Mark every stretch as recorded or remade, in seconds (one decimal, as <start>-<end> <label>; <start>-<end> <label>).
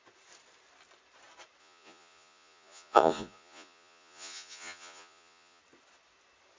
0.0-1.6 recorded; 1.6-5.6 remade; 5.6-6.6 recorded